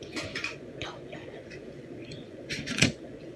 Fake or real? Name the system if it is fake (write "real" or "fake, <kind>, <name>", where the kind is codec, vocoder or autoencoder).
fake, vocoder, Vocos